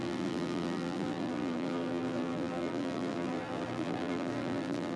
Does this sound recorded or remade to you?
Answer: remade